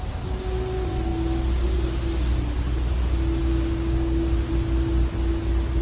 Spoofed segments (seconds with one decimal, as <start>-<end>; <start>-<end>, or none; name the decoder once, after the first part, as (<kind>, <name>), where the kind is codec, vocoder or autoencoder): 3.4-4.5 (codec, DAC)